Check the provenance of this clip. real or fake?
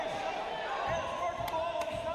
real